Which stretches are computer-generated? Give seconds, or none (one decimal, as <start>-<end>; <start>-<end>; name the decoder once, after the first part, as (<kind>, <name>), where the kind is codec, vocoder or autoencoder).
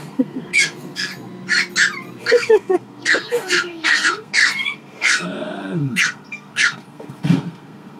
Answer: 0.0-1.1 (codec, SNAC); 2.2-8.0